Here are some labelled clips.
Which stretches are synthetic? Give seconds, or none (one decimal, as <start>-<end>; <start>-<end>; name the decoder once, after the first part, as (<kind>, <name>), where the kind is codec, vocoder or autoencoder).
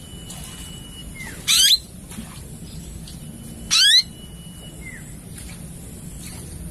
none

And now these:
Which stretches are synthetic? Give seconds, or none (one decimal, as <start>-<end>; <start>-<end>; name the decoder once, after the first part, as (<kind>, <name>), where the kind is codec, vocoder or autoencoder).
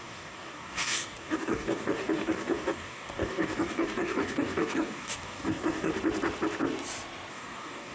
0.0-5.9 (codec, DAC); 7.3-7.9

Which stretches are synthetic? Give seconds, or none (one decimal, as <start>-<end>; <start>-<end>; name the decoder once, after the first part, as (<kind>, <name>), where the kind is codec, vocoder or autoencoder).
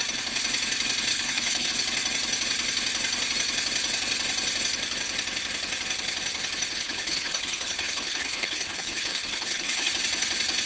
1.1-1.7 (codec, HILCodec); 6.7-9.9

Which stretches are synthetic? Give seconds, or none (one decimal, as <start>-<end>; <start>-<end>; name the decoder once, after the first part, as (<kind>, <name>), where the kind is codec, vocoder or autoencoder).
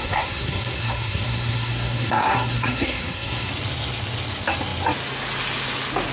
0.0-3.5 (codec, SNAC)